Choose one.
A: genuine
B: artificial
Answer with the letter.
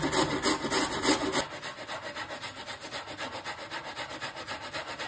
A